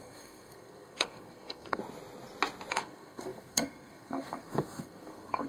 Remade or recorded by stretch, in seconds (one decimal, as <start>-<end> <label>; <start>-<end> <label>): 0.0-1.8 remade; 1.8-2.7 recorded; 2.7-5.5 remade